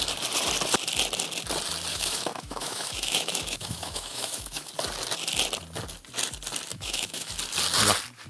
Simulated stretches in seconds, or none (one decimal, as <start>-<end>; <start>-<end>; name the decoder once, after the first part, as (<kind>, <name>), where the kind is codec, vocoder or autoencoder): 1.9-4.7 (autoencoder, DAC-VAE); 6.7-7.3